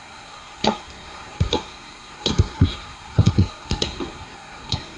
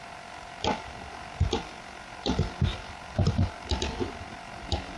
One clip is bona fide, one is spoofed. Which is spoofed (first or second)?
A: first